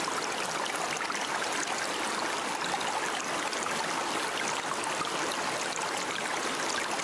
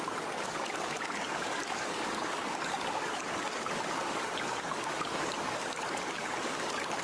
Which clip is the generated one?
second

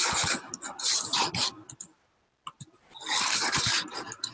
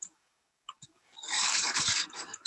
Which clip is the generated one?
second